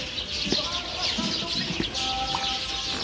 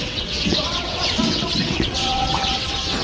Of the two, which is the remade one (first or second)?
second